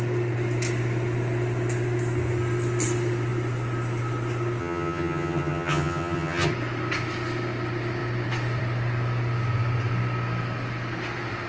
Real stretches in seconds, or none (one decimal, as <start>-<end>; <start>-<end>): 0.0-4.6; 6.5-11.5